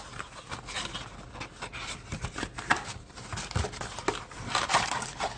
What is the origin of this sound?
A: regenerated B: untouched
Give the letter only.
B